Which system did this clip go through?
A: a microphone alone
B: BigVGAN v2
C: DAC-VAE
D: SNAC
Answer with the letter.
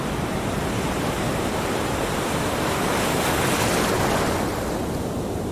A